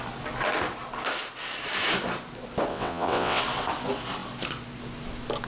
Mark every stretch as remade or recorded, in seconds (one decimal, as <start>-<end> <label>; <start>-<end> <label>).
0.0-2.7 recorded; 2.7-3.4 remade; 3.4-5.5 recorded